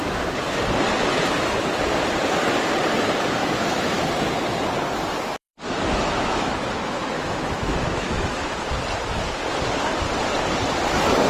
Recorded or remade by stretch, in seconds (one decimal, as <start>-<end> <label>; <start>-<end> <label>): 0.0-3.4 recorded; 3.4-4.0 remade; 4.0-5.4 recorded; 5.4-8.7 remade; 8.7-11.3 recorded